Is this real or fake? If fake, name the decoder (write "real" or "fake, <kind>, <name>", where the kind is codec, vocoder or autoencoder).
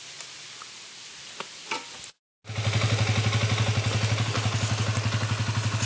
real